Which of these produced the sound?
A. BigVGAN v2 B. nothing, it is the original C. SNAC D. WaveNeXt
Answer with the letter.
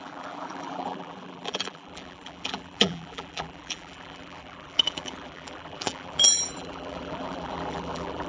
A